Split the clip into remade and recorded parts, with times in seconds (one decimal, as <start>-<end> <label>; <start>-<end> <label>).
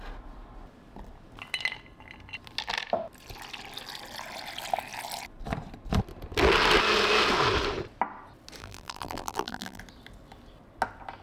0.0-8.6 recorded; 8.6-9.8 remade; 9.8-11.2 recorded